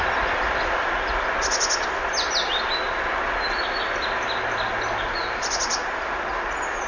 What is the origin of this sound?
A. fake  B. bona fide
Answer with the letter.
B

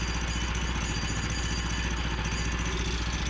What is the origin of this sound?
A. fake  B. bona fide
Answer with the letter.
B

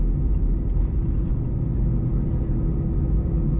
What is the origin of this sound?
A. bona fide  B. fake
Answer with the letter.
A